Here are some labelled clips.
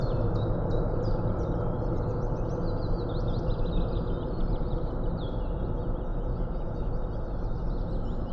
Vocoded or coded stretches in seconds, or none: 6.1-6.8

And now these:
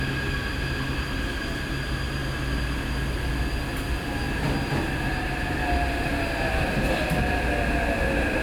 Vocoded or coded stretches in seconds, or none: none

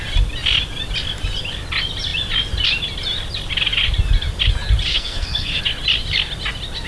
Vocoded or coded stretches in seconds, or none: 4.9-5.6

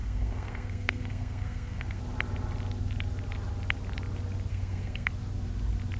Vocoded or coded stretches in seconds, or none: 0.0-2.0; 4.5-5.1

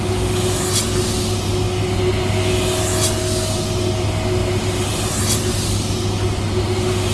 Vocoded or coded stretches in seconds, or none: none

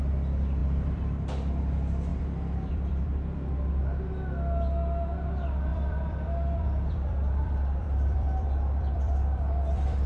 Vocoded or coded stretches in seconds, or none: 0.6-1.1; 2.1-3.8; 5.7-10.1

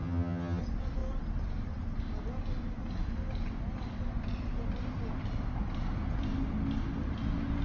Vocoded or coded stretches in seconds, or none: 0.0-0.6

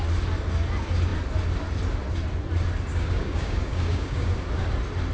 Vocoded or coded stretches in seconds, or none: 2.9-4.3